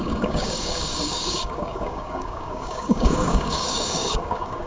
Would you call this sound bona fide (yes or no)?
no